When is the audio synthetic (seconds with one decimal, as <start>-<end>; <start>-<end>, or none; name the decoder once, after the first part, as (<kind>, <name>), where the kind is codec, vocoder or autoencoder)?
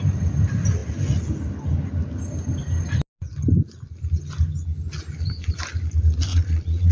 6.3-6.9 (vocoder, Vocos)